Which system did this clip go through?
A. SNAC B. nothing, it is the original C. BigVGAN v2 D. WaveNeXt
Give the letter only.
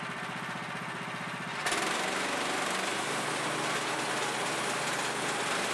B